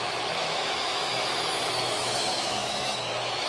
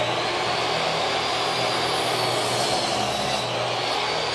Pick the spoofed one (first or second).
first